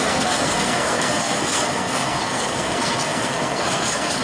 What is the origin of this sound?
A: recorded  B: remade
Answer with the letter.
B